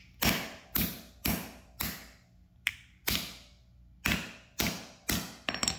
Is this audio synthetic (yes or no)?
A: no